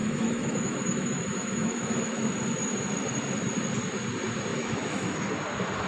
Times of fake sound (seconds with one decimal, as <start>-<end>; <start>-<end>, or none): 0.0-2.3; 4.5-5.2